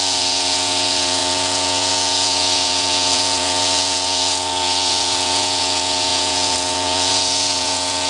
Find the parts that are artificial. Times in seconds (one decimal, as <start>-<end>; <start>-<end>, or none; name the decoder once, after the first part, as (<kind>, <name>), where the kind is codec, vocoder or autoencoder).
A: 0.0-8.1 (vocoder, Vocos)